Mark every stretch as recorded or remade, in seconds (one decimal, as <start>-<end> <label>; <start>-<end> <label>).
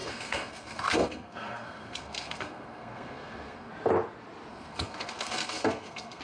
0.0-3.7 remade; 3.7-4.5 recorded; 4.5-6.2 remade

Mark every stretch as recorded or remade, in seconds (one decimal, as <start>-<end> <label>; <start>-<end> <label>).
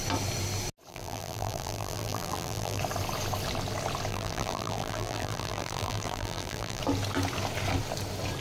0.0-0.9 recorded; 0.9-2.8 remade; 2.8-4.1 recorded; 4.1-6.8 remade; 6.8-8.4 recorded